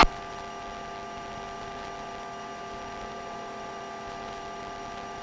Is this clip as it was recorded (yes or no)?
yes